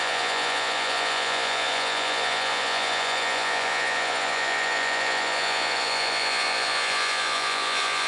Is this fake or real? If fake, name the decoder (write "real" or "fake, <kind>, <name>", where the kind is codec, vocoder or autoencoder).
fake, vocoder, Vocos